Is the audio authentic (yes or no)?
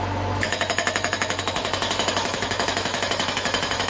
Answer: no